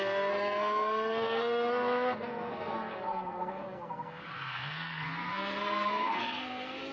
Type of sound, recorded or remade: remade